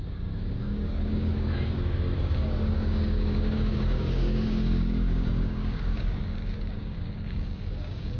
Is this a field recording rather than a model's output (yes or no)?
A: no